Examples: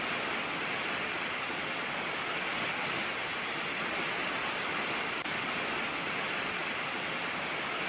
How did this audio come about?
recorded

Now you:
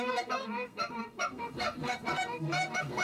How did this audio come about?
remade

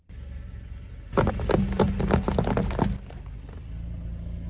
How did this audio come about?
recorded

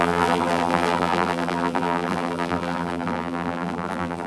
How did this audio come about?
remade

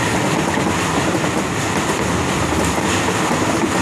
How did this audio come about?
remade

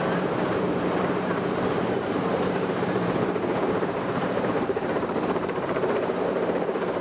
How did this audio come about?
remade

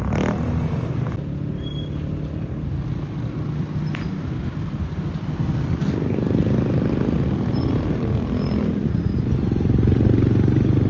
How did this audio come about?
recorded